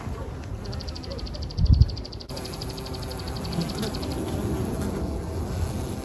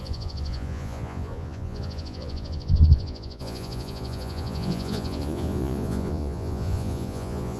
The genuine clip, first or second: first